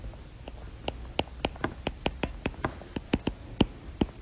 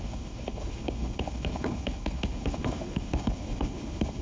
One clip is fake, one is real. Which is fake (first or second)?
second